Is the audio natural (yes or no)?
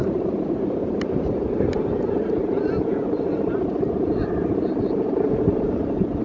no